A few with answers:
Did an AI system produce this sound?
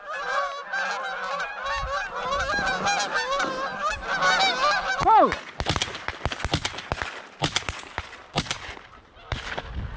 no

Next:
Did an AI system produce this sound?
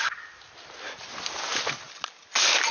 no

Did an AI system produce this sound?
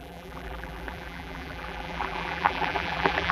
yes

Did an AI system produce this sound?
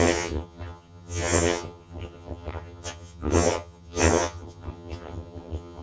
yes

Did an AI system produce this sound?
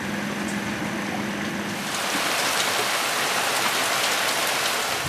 no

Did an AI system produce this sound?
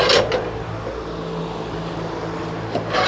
no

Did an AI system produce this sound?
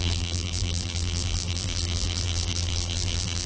yes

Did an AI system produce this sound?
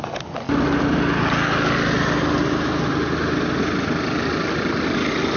no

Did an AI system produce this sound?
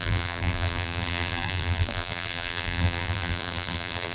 yes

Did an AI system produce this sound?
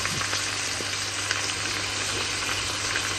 no